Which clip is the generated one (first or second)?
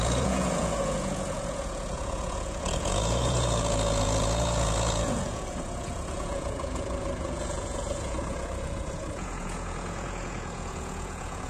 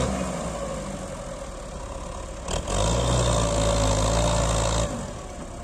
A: first